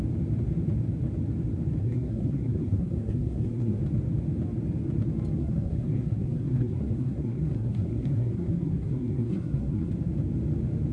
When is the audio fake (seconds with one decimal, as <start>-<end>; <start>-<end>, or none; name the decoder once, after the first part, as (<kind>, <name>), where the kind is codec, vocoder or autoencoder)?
1.8-3.8 (codec, SNAC); 5.4-9.9